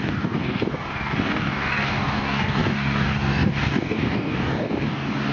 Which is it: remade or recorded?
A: remade